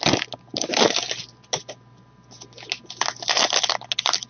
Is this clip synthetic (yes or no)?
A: no